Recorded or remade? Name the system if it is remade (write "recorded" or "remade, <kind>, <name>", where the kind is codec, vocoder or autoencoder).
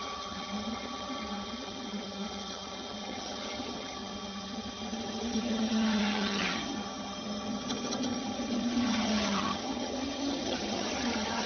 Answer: remade, vocoder, HiFi-GAN